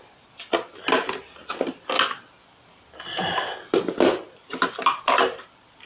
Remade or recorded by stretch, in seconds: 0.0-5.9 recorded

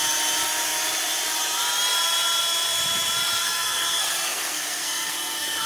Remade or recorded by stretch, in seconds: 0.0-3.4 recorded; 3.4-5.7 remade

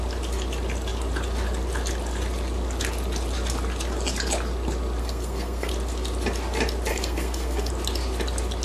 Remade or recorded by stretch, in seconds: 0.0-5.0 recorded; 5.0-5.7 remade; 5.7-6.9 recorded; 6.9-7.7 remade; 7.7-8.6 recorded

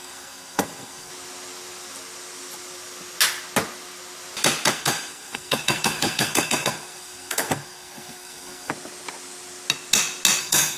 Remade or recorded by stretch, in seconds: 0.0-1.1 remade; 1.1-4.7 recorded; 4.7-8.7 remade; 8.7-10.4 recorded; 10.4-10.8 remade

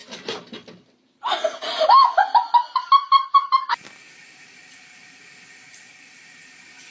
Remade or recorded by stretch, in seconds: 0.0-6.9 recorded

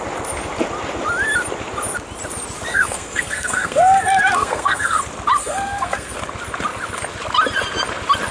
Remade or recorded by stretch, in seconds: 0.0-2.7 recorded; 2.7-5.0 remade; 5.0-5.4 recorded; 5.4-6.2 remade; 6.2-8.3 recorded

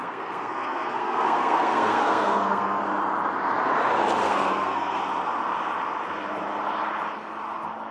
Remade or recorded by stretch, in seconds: 0.0-2.8 remade; 2.8-4.2 recorded; 4.2-5.0 remade; 5.0-7.9 recorded